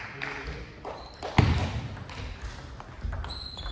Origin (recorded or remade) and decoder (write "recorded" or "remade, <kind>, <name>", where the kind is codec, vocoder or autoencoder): recorded